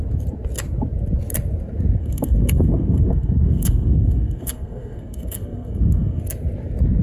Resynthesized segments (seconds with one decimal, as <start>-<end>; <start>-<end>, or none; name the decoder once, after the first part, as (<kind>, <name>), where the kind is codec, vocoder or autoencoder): 2.0-6.2 (codec, SNAC)